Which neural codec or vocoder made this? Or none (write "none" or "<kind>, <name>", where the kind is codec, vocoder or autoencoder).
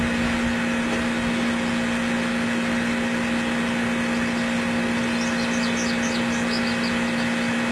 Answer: none